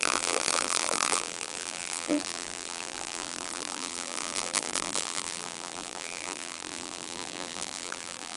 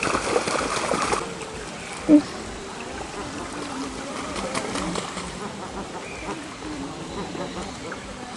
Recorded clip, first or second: second